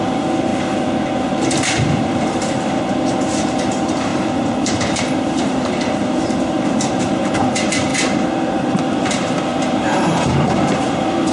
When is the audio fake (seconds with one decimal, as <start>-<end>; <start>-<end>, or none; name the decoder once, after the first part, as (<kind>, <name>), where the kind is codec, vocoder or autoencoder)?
0.0-0.5 (vocoder, BigVGAN v2); 1.3-11.3